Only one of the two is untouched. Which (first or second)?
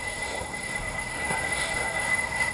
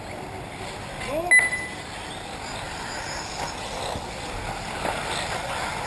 second